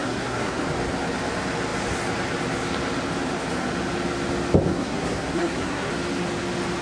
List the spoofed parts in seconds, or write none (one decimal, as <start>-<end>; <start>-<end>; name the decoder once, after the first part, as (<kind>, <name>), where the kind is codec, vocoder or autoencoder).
0.0-0.6 (codec, SNAC); 4.7-5.9